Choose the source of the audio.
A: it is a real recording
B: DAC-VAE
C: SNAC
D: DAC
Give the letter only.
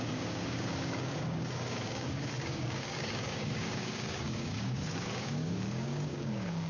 D